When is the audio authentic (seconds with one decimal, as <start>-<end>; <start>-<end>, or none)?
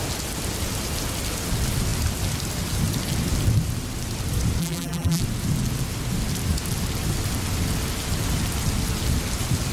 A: 0.0-4.6; 5.2-9.7